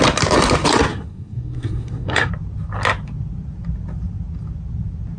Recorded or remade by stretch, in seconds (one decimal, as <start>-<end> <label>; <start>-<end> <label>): 0.0-0.9 recorded; 0.9-2.3 remade; 2.3-5.2 recorded